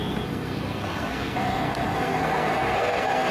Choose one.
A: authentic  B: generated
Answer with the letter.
B